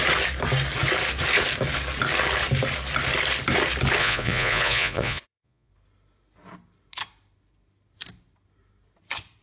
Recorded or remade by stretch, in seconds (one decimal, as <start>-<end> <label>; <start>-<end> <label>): 0.0-4.0 recorded; 4.0-5.7 remade; 5.7-9.4 recorded